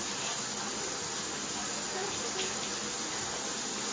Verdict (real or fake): real